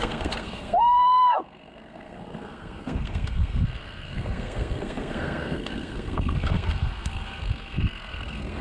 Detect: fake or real fake